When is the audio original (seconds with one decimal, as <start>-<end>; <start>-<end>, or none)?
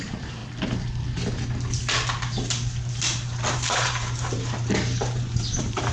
0.4-3.5